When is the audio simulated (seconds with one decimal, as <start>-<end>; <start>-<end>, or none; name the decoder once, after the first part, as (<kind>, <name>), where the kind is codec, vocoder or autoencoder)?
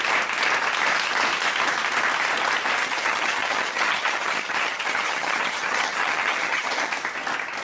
2.8-6.9 (vocoder, HiFi-GAN)